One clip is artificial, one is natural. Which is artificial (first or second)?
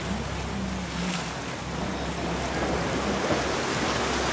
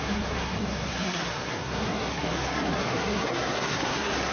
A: second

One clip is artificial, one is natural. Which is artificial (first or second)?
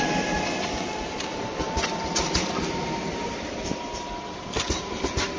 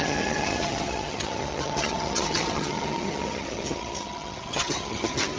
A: second